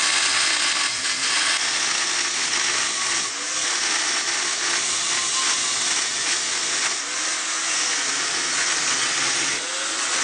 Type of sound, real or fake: real